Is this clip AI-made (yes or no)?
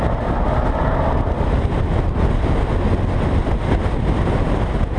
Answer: no